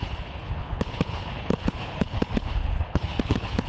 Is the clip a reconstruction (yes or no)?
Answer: yes